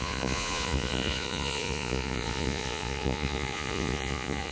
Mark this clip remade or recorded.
remade